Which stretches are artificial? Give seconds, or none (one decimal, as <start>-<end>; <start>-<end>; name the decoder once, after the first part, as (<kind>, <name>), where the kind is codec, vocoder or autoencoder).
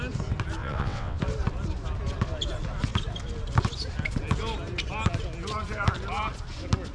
0.6-1.2 (vocoder, WaveNeXt)